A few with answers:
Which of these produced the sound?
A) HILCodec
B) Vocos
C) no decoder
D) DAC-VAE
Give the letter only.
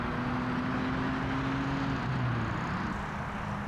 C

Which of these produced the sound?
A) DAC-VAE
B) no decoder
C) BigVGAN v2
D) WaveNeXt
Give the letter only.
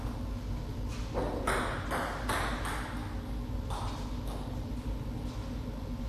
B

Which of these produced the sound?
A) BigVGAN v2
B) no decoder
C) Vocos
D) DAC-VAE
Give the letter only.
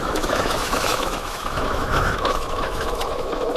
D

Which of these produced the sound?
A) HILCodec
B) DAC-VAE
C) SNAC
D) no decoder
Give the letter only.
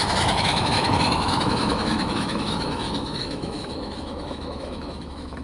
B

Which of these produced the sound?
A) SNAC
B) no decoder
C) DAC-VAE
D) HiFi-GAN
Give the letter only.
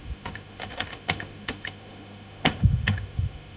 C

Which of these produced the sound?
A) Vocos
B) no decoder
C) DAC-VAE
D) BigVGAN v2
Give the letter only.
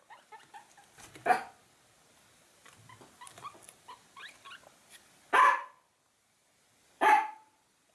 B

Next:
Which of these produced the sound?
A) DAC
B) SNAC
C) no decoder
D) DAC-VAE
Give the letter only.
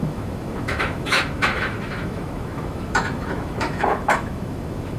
D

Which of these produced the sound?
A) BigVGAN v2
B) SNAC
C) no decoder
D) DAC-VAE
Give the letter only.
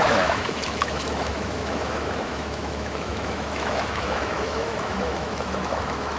D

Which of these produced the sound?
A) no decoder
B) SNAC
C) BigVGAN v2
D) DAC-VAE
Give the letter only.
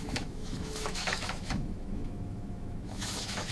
D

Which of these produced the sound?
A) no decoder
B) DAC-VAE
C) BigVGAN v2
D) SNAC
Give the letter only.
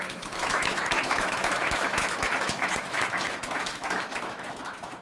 B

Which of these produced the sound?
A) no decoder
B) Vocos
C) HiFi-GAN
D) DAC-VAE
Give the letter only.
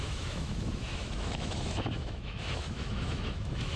D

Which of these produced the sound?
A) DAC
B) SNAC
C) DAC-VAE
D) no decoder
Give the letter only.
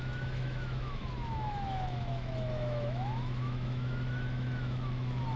C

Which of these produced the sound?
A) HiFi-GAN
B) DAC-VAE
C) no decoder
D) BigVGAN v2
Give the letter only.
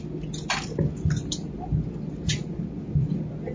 C